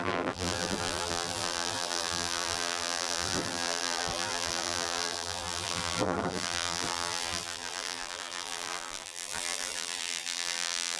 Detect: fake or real fake